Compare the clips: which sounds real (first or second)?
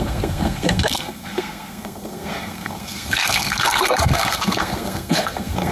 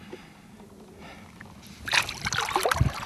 second